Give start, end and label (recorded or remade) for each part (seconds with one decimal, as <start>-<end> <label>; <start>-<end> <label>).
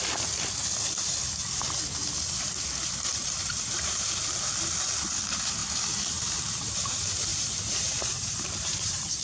0.0-3.2 recorded; 3.2-4.1 remade; 4.1-5.6 recorded; 5.6-6.2 remade; 6.2-7.3 recorded; 7.3-9.2 remade